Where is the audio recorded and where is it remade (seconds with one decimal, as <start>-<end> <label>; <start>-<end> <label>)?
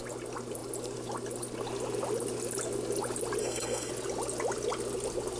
0.0-3.4 recorded; 3.4-3.9 remade; 3.9-5.4 recorded